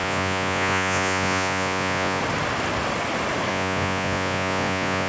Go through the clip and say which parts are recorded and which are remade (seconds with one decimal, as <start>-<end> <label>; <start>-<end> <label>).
0.0-2.2 remade; 2.2-3.5 recorded; 3.5-5.1 remade